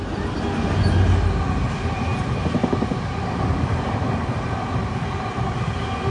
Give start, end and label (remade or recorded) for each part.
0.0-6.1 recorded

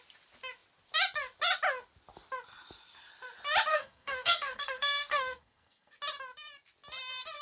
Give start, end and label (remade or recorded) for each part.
0.0-3.7 recorded; 3.7-6.0 remade; 6.0-7.4 recorded

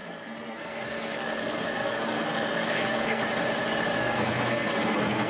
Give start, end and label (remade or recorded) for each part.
0.0-3.2 remade; 3.2-4.0 recorded; 4.0-5.3 remade

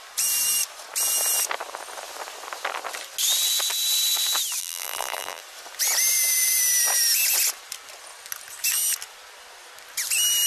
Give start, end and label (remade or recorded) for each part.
0.0-4.6 recorded; 4.6-5.4 remade; 5.4-10.5 recorded

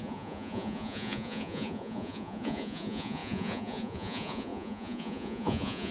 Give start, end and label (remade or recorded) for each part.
0.0-5.9 remade

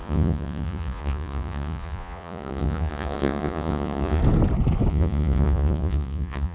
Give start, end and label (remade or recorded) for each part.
0.0-4.2 remade; 4.2-4.9 recorded; 4.9-6.5 remade

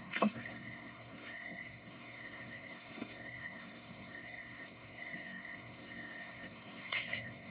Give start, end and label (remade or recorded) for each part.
0.0-7.5 remade

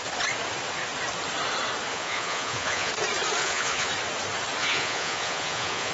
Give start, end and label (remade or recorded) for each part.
0.0-1.9 recorded; 1.9-2.9 remade; 2.9-3.4 recorded; 3.4-3.9 remade; 3.9-4.6 recorded; 4.6-5.9 remade